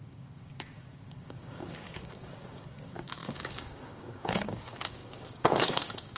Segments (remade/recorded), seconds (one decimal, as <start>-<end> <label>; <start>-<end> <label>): 0.0-6.2 remade